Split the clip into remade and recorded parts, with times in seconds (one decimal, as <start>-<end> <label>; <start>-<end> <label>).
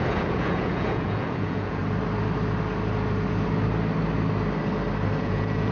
0.0-1.8 remade; 1.8-5.2 recorded; 5.2-5.7 remade